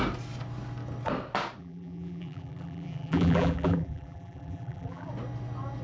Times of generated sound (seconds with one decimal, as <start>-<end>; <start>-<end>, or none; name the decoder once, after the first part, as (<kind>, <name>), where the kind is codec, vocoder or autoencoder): 1.6-5.1 (vocoder, BigVGAN v2)